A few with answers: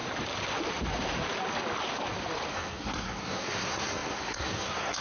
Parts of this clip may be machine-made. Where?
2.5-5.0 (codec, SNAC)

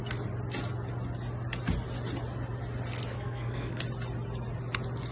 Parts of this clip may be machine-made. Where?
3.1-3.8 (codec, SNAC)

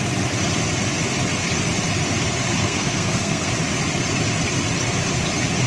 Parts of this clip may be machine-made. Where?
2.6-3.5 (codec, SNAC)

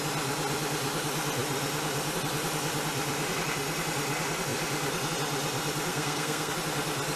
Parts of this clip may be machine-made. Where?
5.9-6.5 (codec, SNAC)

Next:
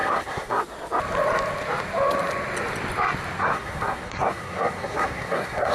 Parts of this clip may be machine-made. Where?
0.0-0.6 (codec, SNAC); 3.4-5.7

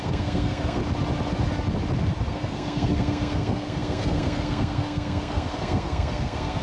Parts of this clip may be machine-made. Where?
0.0-0.8 (codec, SNAC); 2.0-6.6

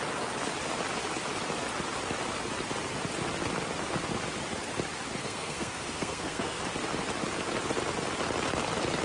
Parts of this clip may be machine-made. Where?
5.2-6.6 (codec, SNAC)